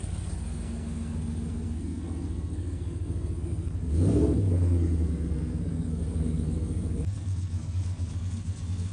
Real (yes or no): no